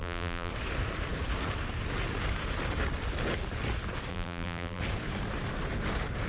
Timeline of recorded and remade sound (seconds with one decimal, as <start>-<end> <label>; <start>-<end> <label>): 0.0-0.5 remade; 0.5-4.1 recorded; 4.1-4.8 remade; 4.8-6.3 recorded

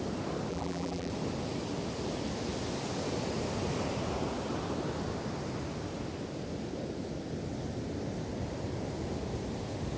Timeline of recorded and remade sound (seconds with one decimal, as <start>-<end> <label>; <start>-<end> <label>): 0.0-0.5 recorded; 0.5-1.1 remade; 1.1-10.0 recorded

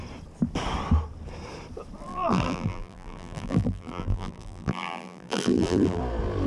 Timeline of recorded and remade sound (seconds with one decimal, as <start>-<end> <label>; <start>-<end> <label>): 0.0-2.1 recorded; 2.1-6.0 remade; 6.0-6.5 recorded